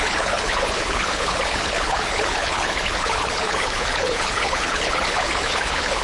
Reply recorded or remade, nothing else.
remade